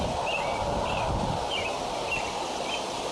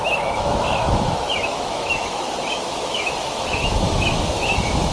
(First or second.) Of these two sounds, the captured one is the first